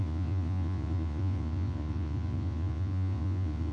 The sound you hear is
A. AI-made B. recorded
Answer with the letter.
A